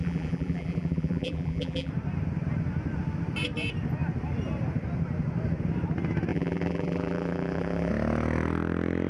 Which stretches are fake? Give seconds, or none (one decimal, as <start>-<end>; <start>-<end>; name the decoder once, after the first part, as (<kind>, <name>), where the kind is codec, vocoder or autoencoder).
0.0-1.9 (vocoder, BigVGAN v2); 6.3-7.9